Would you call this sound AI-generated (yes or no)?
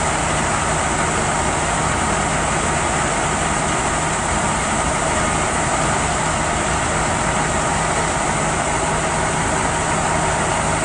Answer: no